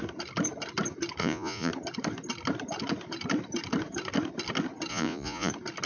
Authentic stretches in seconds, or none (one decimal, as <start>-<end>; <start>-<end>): 0.0-1.2; 1.7-4.9; 5.5-5.9